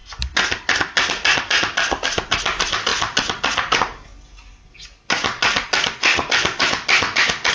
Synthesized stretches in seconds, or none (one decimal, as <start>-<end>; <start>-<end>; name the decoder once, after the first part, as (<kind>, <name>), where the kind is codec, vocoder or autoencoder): none